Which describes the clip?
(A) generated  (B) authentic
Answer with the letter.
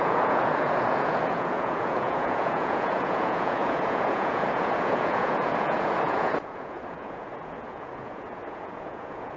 A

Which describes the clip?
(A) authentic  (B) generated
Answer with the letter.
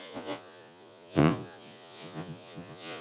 B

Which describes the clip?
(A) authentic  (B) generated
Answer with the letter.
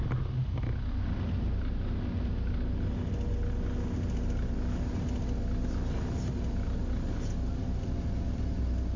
A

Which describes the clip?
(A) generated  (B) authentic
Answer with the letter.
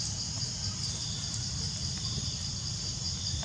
B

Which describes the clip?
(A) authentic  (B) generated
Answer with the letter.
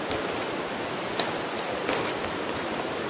A